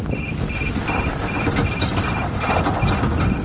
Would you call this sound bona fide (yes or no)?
yes